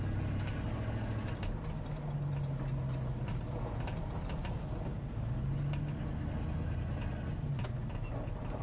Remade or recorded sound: recorded